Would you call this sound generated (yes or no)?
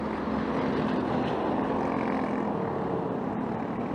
no